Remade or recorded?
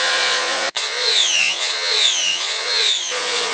remade